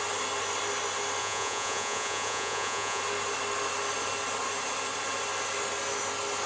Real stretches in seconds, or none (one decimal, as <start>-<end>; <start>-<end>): 0.0-1.2; 3.0-6.5